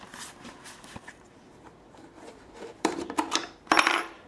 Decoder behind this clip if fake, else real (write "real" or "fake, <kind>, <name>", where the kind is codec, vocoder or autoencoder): fake, vocoder, BigVGAN v2